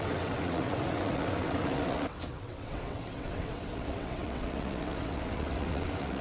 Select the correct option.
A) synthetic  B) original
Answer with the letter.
A